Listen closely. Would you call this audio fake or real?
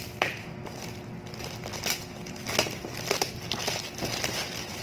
real